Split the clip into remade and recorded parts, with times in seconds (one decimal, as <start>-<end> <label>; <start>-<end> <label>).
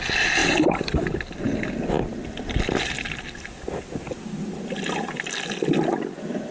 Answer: 0.0-6.5 recorded